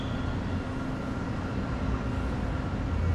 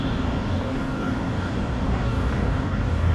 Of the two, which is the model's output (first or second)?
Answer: second